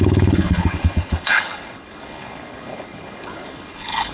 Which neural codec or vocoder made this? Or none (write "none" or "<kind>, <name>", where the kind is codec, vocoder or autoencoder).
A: codec, HILCodec